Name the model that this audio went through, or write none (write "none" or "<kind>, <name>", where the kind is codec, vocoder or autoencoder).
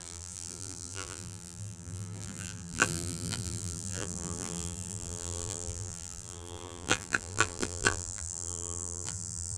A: vocoder, BigVGAN v2